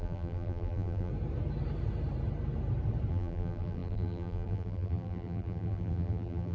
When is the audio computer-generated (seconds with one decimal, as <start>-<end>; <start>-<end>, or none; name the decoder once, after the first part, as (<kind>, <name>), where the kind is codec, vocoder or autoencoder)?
0.0-1.1 (vocoder, BigVGAN v2); 3.1-6.5